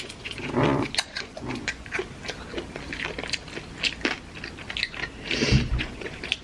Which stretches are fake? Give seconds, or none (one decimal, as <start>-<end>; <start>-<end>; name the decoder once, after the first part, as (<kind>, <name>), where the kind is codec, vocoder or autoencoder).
0.0-2.1 (vocoder, Vocos); 5.7-6.4